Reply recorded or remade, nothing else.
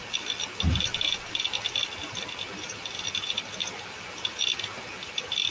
recorded